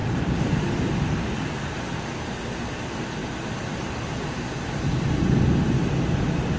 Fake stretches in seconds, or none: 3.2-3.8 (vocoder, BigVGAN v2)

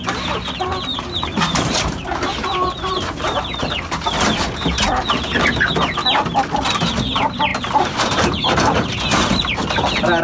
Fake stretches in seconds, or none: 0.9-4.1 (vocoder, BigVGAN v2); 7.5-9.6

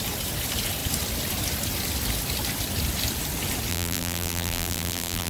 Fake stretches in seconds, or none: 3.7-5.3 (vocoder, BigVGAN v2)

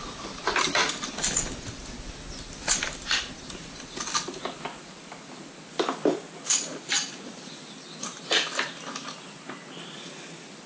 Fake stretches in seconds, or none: 3.6-5.7 (vocoder, BigVGAN v2); 6.7-7.3